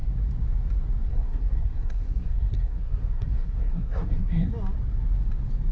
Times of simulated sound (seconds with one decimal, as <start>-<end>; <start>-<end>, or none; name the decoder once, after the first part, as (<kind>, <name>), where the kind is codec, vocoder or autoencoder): 1.1-4.5 (codec, SNAC)